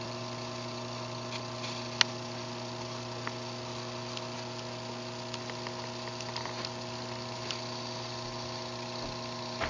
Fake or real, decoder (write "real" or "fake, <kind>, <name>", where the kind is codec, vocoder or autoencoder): real